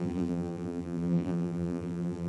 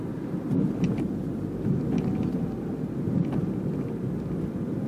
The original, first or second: second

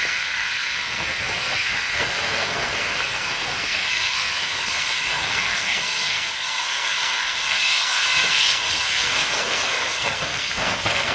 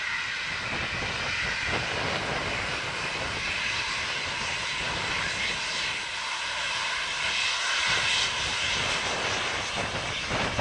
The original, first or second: second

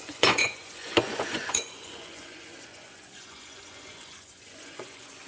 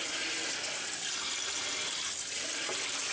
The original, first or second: second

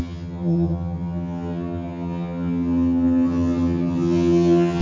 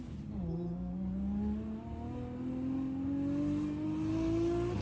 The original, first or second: second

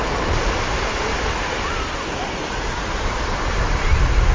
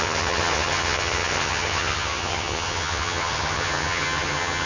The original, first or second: first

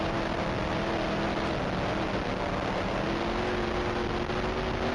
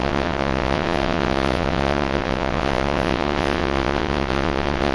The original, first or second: first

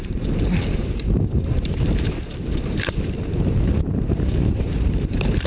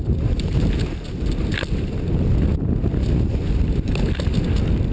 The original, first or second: second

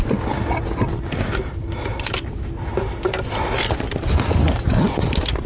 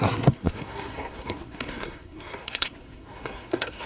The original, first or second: first